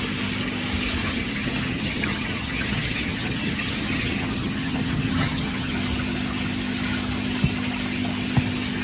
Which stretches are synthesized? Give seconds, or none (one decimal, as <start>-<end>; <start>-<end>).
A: 1.0-5.7